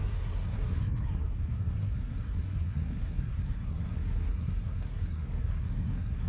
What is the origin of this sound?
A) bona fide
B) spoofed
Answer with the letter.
B